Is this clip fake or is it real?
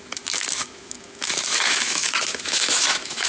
fake